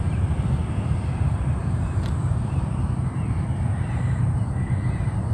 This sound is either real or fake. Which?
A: fake